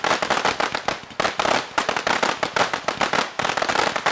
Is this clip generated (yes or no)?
no